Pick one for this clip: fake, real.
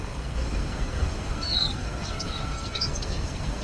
fake